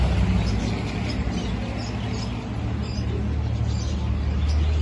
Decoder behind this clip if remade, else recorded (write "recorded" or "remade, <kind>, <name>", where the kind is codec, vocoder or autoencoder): recorded